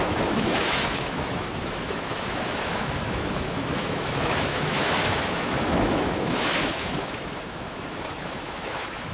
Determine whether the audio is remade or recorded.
remade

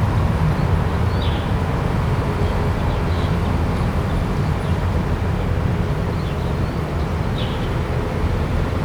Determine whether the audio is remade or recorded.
recorded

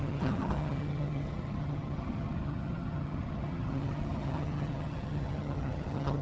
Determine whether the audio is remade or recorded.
remade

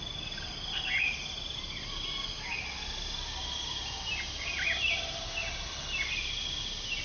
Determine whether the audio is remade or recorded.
recorded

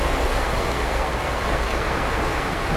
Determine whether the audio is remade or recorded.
remade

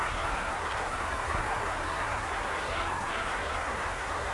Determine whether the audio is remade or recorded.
remade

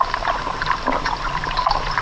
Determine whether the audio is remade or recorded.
recorded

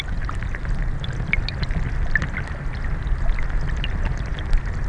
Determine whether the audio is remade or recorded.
recorded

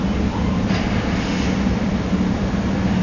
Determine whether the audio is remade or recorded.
recorded